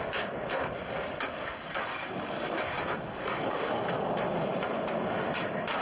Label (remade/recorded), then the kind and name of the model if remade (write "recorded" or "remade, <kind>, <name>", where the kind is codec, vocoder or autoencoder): recorded